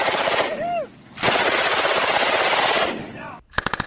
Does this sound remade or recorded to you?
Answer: recorded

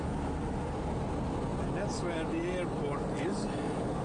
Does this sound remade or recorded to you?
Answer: recorded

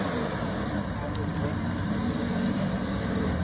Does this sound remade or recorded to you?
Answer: remade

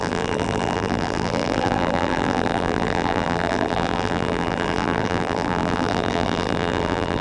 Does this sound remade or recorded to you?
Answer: remade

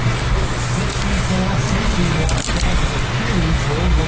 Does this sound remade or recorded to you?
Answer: recorded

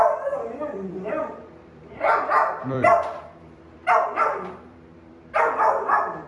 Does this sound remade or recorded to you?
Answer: remade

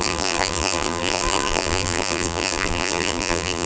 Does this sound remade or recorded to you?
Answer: remade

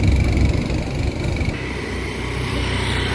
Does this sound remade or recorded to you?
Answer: recorded